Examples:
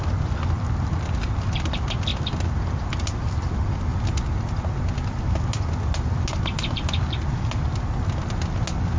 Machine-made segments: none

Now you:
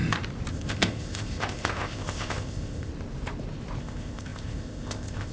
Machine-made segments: 0.5-2.9 (codec, ZipCodec); 3.8-5.3

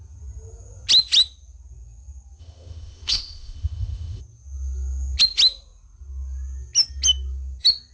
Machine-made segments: 2.4-4.2 (codec, ZipCodec)

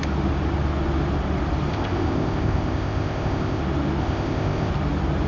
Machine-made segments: 1.7-3.6 (codec, ZipCodec); 4.0-4.7

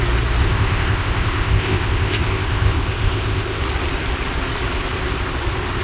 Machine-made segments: 0.4-3.6 (codec, ZipCodec)

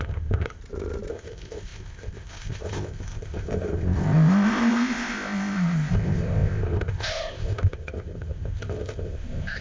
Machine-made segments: 0.0-0.6 (codec, ZipCodec); 1.1-9.6

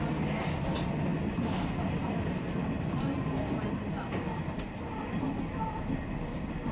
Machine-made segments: none

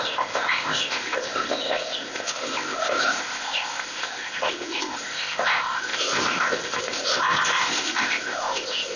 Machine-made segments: 0.0-9.0 (codec, ZipCodec)